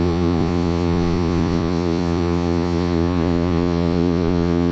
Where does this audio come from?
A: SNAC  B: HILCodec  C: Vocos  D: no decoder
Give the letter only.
C